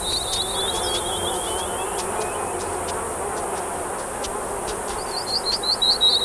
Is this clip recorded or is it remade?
recorded